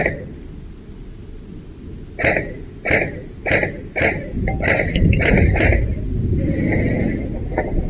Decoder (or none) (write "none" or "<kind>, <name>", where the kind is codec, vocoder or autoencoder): none